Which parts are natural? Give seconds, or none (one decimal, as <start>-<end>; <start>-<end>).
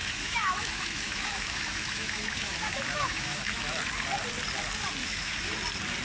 3.6-5.0; 5.6-6.0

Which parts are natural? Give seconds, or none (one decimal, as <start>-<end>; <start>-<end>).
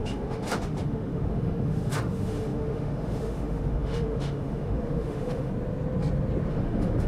5.5-6.5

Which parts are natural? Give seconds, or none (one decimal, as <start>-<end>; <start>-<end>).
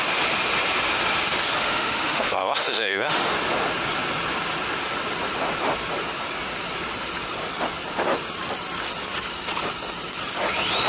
0.0-1.6; 3.3-10.9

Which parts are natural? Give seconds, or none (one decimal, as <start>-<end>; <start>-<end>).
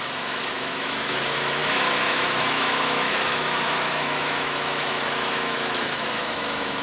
none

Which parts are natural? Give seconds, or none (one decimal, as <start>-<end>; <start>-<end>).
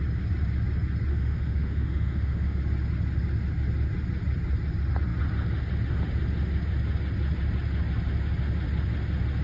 0.0-1.1; 2.6-9.4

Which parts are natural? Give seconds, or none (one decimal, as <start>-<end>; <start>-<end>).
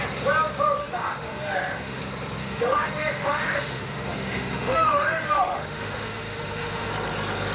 0.0-0.8; 2.0-2.4; 6.9-7.5